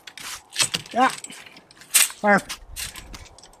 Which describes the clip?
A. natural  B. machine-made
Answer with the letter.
A